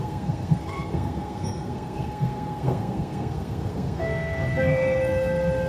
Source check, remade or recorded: remade